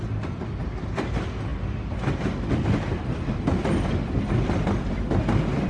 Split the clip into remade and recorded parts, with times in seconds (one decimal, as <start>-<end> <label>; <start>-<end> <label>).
0.0-5.7 recorded